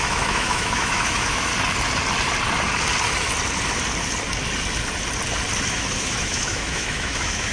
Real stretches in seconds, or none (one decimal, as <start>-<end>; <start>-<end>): 1.5-5.7